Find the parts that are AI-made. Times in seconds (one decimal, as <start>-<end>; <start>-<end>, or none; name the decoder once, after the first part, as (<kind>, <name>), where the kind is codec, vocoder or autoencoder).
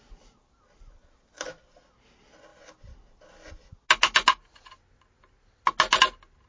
none